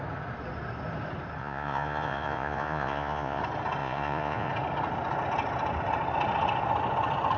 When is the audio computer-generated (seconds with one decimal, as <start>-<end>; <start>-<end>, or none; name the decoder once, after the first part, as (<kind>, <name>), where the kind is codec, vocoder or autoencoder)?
1.4-3.4 (vocoder, Vocos); 3.8-4.5